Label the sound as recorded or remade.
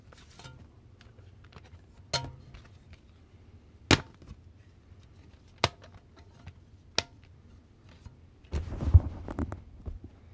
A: recorded